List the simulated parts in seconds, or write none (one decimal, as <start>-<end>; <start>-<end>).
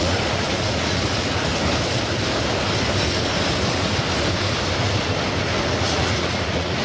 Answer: 0.0-1.5; 5.6-6.8